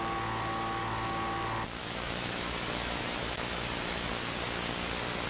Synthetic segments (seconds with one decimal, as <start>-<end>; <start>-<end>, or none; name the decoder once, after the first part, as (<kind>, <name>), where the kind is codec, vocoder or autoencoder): 1.8-4.1 (autoencoder, DAC-VAE)